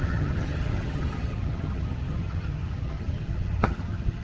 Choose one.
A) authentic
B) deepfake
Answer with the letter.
B